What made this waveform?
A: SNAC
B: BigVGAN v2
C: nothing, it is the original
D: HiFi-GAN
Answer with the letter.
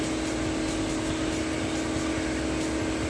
C